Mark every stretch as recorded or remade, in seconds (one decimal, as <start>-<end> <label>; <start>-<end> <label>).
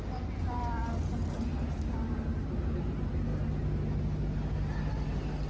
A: 0.0-5.5 recorded